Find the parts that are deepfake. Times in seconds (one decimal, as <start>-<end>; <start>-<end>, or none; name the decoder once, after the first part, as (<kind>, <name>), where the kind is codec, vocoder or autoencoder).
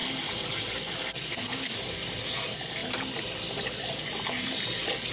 none